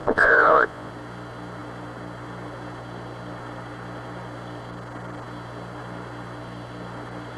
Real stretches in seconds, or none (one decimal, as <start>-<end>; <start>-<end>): 0.9-7.4